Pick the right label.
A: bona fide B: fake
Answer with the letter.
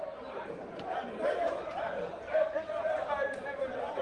B